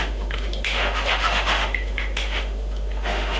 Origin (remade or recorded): remade